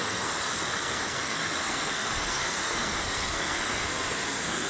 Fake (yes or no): yes